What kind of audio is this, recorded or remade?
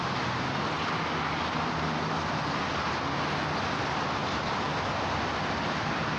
recorded